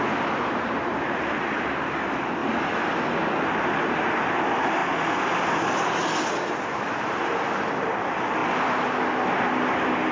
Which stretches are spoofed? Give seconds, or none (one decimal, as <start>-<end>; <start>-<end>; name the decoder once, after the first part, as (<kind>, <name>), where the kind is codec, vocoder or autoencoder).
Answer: 2.4-3.5 (vocoder, BigVGAN v2)